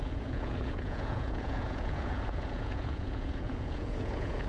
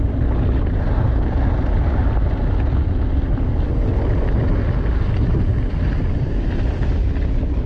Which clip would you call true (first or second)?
second